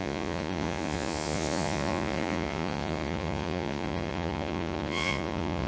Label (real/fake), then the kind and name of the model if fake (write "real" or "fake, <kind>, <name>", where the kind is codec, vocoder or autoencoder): fake, vocoder, Vocos